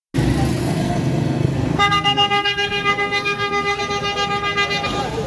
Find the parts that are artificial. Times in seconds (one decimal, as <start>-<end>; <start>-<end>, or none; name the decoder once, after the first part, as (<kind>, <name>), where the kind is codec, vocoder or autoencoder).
0.6-3.8 (codec, SNAC)